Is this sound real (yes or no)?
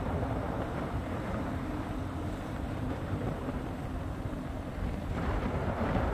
no